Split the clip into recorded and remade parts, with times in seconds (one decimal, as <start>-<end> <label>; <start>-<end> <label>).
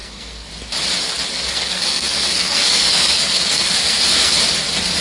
0.0-0.5 remade; 0.5-1.3 recorded; 1.3-4.3 remade; 4.3-5.0 recorded